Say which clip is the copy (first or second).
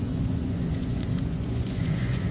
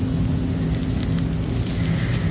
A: first